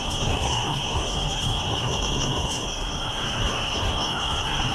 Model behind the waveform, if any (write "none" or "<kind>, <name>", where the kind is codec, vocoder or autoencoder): codec, SNAC